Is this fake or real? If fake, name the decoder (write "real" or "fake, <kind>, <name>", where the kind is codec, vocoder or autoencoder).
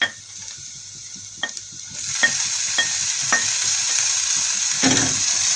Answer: real